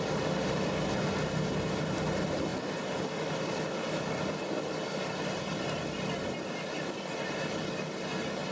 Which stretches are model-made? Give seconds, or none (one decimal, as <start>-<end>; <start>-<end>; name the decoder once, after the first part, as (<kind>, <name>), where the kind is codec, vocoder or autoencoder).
none

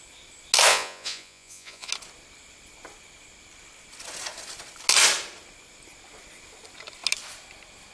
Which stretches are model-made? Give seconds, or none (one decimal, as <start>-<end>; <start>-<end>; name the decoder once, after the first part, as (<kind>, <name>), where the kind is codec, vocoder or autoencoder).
0.7-1.9 (vocoder, Vocos)

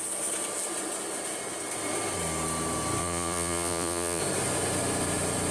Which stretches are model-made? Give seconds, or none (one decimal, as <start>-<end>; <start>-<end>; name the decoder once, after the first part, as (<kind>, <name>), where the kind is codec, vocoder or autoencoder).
3.0-4.2 (vocoder, Vocos)

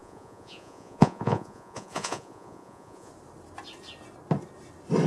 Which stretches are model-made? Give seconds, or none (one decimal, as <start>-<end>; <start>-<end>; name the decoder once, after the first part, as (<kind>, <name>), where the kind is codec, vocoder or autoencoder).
0.0-3.1 (vocoder, Vocos)

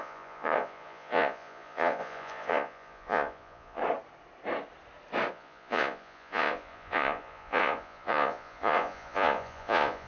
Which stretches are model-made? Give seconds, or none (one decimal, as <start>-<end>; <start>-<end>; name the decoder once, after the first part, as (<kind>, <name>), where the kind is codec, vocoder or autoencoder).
0.0-3.8 (vocoder, Vocos); 5.3-10.1

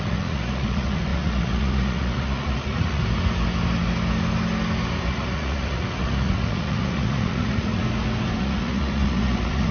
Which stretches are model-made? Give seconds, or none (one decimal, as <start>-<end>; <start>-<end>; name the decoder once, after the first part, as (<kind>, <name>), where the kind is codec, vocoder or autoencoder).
0.0-3.0 (vocoder, Vocos); 5.1-7.8; 8.4-9.7

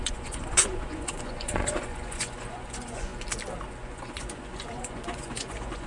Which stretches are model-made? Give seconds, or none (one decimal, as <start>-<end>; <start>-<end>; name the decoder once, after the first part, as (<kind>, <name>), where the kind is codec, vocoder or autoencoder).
0.0-3.1 (vocoder, Vocos); 3.7-5.9